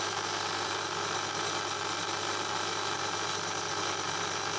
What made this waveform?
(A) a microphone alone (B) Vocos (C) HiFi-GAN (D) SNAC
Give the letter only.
A